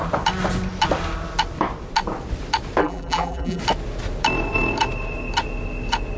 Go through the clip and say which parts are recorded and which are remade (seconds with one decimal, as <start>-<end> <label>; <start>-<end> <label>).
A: 0.0-2.8 recorded; 2.8-3.6 remade; 3.6-6.2 recorded

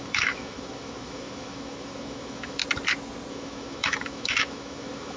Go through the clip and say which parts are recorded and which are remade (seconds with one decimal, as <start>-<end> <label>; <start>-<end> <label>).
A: 0.0-2.6 remade; 2.6-3.3 recorded; 3.3-5.2 remade

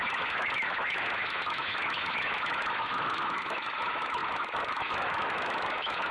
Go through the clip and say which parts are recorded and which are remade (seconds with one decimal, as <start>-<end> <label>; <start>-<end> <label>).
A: 0.0-6.1 remade